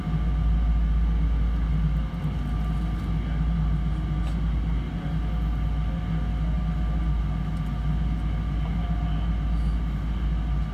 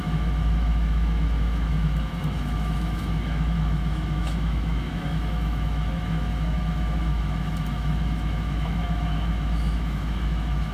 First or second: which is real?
first